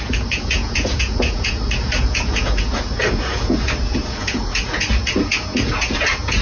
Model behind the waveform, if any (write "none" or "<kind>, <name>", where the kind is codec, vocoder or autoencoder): vocoder, Vocos